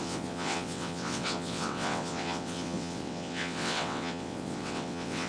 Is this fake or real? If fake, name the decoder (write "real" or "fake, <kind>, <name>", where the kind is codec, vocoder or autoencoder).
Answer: fake, vocoder, WaveNeXt